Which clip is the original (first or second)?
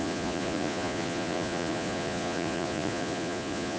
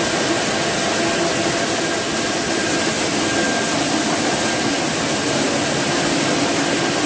second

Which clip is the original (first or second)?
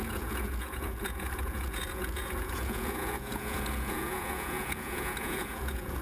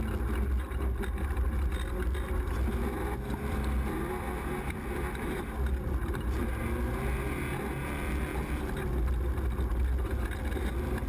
second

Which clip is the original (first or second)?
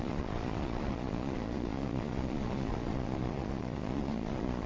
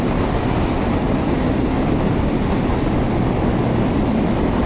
second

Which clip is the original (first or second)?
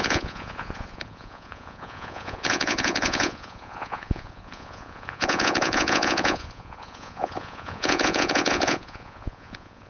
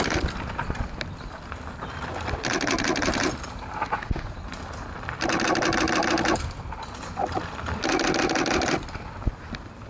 second